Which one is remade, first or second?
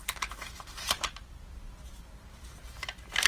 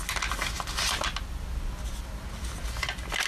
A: first